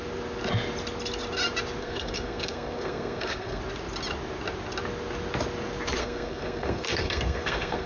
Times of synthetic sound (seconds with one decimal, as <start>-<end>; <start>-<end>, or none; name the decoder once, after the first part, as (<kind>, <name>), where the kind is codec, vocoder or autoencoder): 1.8-3.6 (codec, SNAC); 6.0-7.9